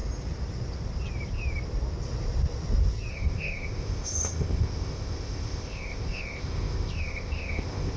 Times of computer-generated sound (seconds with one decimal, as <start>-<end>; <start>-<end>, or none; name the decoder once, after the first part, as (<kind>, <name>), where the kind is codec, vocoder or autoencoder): 3.1-8.0 (codec, ZipCodec)